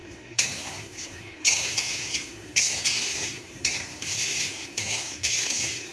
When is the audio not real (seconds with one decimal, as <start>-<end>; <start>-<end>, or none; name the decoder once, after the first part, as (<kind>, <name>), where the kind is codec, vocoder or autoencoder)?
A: 0.0-5.9 (codec, SNAC)